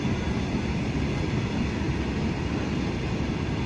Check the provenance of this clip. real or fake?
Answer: real